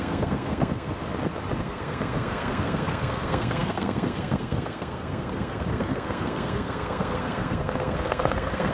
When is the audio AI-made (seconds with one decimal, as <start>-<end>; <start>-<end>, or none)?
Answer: 0.0-1.0; 1.6-8.7

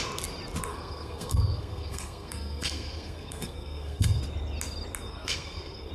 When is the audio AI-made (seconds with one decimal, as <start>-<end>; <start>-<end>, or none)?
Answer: 0.7-4.2; 5.1-5.9

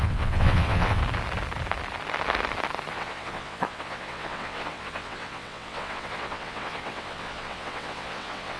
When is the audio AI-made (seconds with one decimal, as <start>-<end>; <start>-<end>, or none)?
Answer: 0.0-1.0; 2.9-8.6

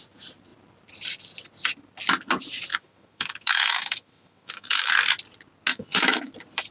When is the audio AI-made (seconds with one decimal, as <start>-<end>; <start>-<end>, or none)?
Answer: 2.7-4.9; 5.7-6.3

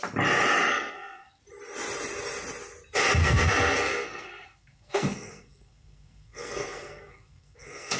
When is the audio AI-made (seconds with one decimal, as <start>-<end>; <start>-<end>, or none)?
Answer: 0.7-1.4; 3.2-8.0

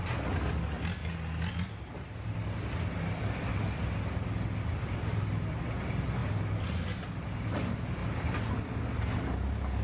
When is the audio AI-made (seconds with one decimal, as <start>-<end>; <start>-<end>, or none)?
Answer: none

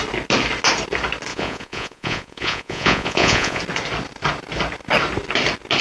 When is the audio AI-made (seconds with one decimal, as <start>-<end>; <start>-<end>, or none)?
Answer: 1.3-3.6